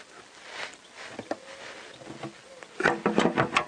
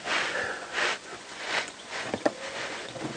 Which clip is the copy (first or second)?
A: second